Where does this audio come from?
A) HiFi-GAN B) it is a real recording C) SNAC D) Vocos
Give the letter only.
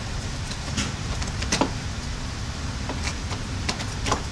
B